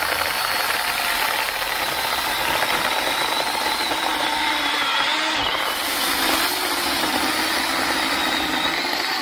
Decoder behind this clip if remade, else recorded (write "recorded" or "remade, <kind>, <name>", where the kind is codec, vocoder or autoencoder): recorded